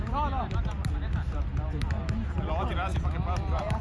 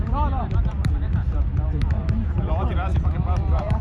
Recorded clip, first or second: first